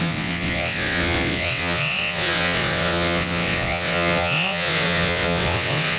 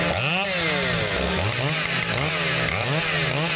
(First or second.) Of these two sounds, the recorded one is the second